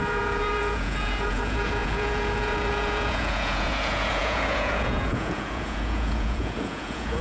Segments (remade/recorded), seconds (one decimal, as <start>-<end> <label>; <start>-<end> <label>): 0.0-7.2 remade